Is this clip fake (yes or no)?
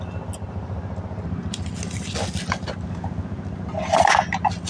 no